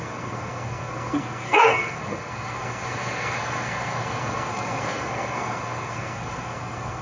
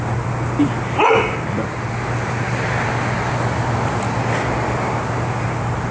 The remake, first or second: first